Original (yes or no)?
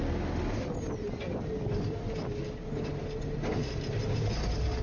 yes